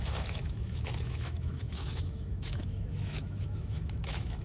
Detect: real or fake fake